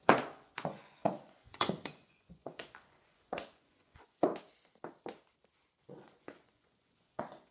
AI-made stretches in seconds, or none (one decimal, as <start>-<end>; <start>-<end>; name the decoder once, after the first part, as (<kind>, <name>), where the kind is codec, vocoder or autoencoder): 0.0-4.3 (vocoder, Vocos); 5.8-7.5